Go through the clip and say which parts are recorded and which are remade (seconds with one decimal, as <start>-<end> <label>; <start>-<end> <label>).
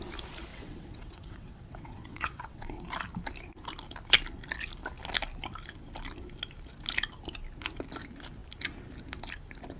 0.0-0.5 recorded; 0.5-2.8 remade; 2.8-9.8 recorded